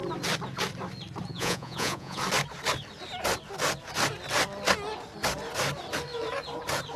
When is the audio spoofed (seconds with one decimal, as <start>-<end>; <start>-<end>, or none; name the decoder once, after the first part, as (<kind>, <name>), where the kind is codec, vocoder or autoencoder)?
1.3-2.2 (vocoder, Vocos)